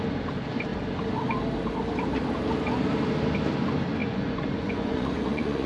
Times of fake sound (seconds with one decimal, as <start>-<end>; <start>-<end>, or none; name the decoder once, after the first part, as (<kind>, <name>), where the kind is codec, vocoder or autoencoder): 4.0-5.7 (vocoder, Vocos)